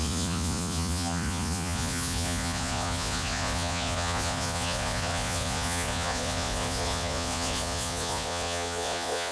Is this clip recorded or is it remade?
remade